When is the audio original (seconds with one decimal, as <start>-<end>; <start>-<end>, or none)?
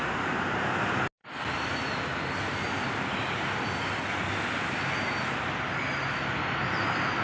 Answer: 0.0-7.2